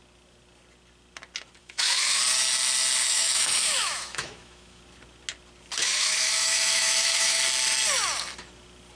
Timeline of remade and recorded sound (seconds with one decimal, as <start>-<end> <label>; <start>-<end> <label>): 0.0-1.6 recorded; 1.6-2.2 remade; 2.2-3.0 recorded; 3.0-4.8 remade; 4.8-5.8 recorded; 5.8-7.4 remade; 7.4-9.0 recorded